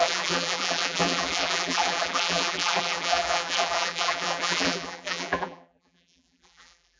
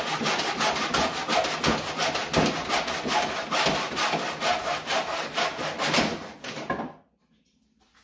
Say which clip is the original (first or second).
second